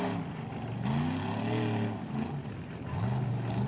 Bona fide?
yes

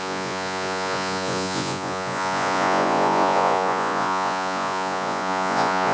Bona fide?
no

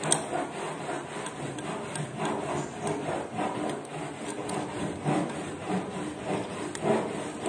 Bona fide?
yes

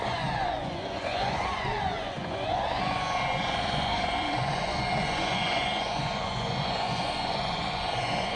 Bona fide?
no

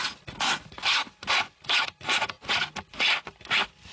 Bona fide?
yes